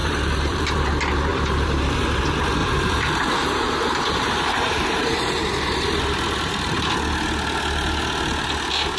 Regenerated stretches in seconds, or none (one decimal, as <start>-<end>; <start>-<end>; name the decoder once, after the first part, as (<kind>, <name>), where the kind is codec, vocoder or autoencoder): 0.0-0.9 (vocoder, BigVGAN v2); 1.3-2.2; 2.6-6.9